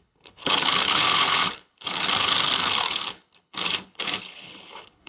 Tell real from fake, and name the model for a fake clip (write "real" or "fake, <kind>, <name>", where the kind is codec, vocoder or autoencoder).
fake, codec, HILCodec